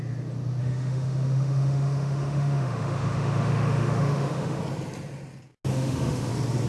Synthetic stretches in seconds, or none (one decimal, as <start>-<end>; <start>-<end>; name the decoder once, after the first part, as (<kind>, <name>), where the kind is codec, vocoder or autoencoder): 0.6-4.6 (autoencoder, DAC-VAE); 5.7-6.3